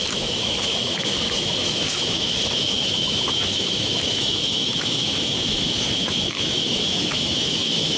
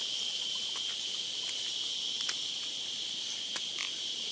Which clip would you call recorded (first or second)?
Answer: second